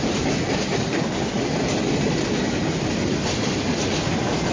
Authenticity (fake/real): real